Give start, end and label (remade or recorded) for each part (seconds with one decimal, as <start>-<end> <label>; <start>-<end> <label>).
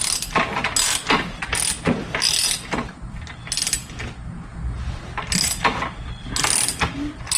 0.0-7.4 recorded